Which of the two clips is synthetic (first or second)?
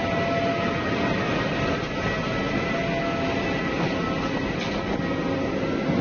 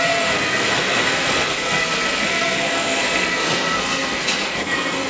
second